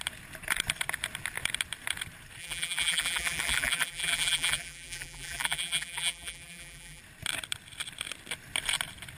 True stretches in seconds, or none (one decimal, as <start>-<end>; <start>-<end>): 0.0-2.4; 7.0-9.2